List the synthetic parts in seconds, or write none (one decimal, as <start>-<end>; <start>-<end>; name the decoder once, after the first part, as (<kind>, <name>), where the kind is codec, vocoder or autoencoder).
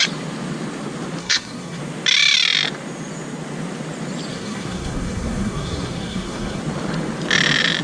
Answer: 1.2-1.8 (codec, SNAC); 4.3-6.6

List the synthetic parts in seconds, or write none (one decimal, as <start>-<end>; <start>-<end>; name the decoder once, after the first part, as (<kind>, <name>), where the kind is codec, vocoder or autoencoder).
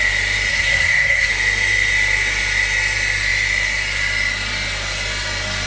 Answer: 0.5-1.3 (codec, SNAC)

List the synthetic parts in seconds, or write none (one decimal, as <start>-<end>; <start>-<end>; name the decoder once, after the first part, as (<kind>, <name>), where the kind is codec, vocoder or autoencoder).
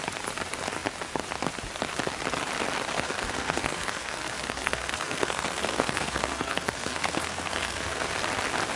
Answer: 2.9-8.1 (codec, SNAC)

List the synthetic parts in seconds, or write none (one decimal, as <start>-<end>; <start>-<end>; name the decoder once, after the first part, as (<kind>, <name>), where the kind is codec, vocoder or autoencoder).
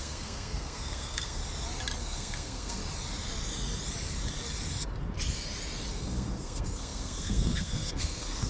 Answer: 0.0-1.4 (codec, SNAC); 2.0-2.8; 5.9-8.5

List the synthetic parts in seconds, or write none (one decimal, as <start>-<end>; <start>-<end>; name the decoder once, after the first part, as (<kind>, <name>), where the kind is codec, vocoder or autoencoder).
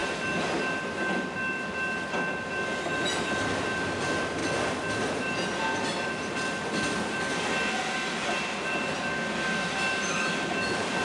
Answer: none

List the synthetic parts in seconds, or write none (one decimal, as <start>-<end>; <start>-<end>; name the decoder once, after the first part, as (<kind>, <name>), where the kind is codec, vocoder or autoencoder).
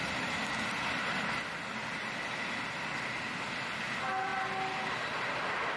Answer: none